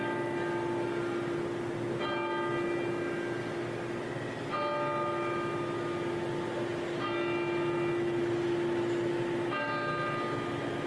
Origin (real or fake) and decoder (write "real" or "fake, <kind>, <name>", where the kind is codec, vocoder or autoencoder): real